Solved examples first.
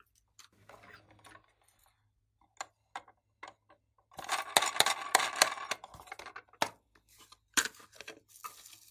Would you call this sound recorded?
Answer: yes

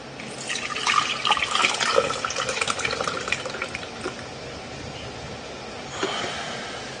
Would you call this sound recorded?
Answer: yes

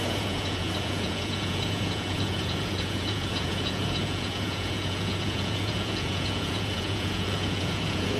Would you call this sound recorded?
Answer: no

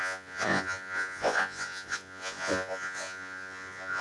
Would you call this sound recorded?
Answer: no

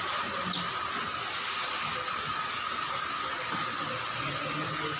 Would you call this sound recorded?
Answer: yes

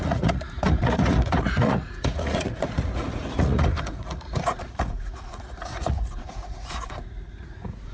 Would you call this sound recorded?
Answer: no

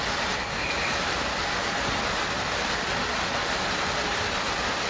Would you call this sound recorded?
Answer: yes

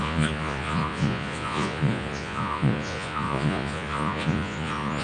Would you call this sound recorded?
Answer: no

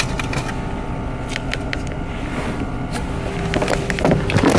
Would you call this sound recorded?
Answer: yes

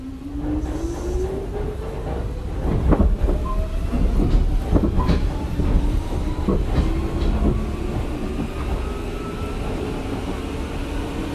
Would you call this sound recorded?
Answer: yes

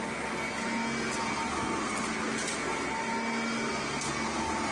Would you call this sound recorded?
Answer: yes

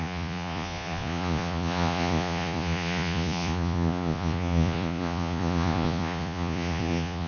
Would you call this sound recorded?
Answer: no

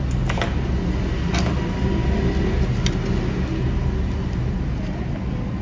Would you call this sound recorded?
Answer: yes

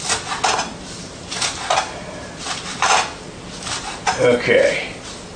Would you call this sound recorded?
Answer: yes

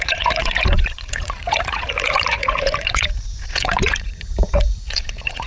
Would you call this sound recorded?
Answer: no